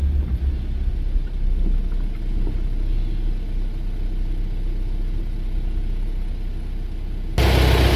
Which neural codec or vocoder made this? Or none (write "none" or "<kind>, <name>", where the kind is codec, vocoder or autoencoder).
none